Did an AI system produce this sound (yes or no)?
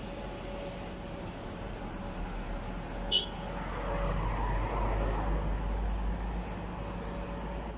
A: no